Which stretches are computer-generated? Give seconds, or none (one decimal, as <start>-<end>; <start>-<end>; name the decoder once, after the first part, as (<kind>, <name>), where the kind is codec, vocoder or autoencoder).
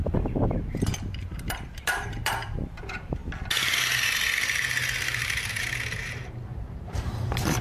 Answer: 0.0-3.2 (vocoder, BigVGAN v2); 5.2-7.6